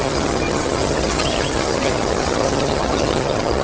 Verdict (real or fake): fake